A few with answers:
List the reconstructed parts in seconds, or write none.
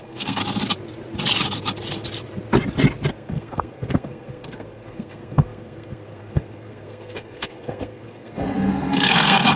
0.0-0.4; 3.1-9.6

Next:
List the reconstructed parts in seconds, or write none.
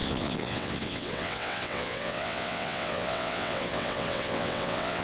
0.0-5.0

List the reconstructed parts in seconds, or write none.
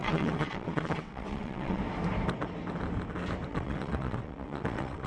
0.0-1.8; 3.5-5.1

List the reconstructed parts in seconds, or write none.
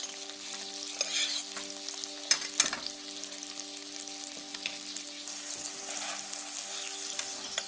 none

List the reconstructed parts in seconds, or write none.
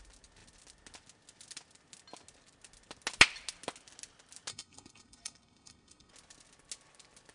4.5-6.1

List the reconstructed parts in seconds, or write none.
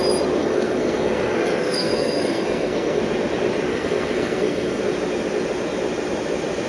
0.4-3.0; 3.7-4.8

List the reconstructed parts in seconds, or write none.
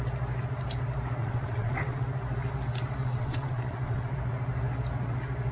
1.2-2.0; 3.0-4.1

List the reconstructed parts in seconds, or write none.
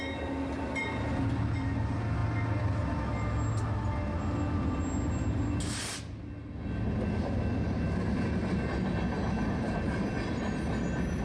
none